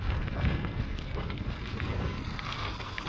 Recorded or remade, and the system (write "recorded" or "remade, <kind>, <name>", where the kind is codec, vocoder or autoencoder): remade, codec, SNAC